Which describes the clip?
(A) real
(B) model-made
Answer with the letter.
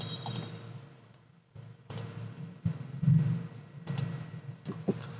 A